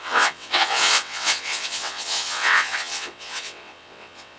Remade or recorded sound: remade